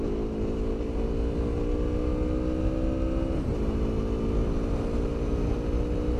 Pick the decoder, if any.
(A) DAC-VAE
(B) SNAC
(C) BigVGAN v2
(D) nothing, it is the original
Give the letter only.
D